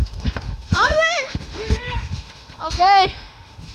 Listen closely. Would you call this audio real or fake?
fake